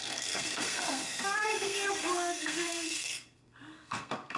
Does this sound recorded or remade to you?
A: remade